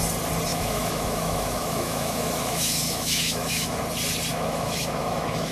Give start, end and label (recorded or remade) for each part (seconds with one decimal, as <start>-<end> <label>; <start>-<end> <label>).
0.0-0.5 recorded; 0.5-3.8 remade; 3.8-4.3 recorded; 4.3-5.5 remade